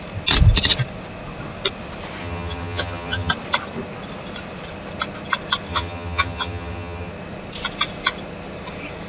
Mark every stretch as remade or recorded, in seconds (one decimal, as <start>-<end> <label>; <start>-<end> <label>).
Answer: 0.0-2.2 recorded; 2.2-3.3 remade; 3.3-5.7 recorded; 5.7-7.1 remade; 7.1-9.1 recorded